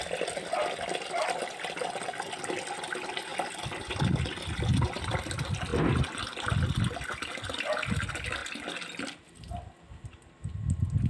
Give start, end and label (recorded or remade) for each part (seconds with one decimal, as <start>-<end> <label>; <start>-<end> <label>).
0.0-11.1 recorded